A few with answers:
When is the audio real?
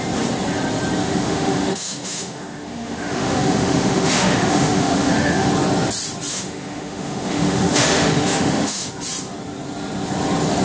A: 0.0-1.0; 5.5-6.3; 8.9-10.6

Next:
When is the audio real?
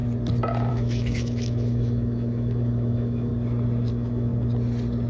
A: 0.0-0.7; 3.3-3.9; 4.3-5.1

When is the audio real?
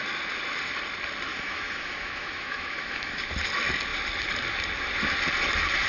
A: 0.0-1.3; 3.3-5.9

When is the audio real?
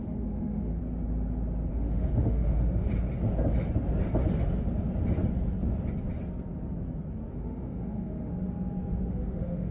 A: 0.8-1.7; 2.9-7.3; 8.3-9.1